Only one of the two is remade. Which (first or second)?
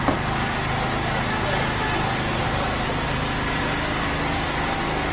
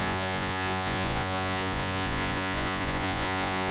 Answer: second